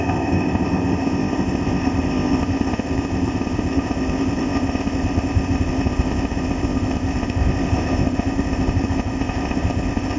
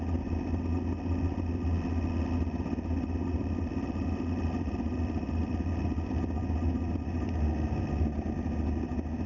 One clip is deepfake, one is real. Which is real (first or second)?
second